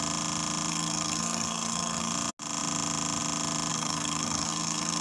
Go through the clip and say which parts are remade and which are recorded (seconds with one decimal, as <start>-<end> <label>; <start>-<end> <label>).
0.0-0.7 recorded; 0.7-2.1 remade; 2.1-3.7 recorded; 3.7-5.0 remade

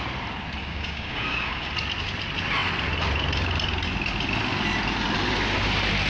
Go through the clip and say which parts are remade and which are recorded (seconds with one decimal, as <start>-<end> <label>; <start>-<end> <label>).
0.0-0.6 recorded; 0.6-1.7 remade; 1.7-6.1 recorded

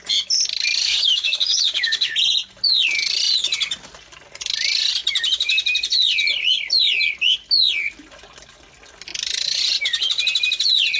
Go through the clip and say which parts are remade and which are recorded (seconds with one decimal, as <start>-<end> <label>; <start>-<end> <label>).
0.0-0.8 recorded; 0.8-2.1 remade; 2.1-11.0 recorded